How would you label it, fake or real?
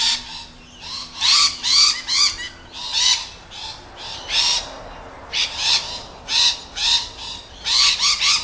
real